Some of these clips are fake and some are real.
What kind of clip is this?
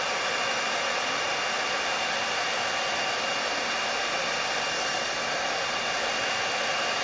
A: real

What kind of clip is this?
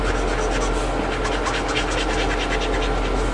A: real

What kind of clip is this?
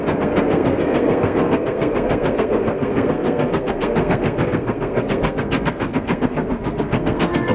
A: fake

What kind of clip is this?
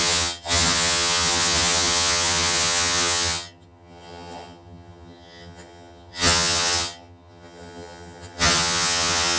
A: fake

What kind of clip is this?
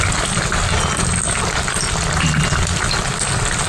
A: real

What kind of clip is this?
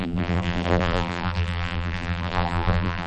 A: fake